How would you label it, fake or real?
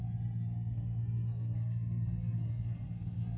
fake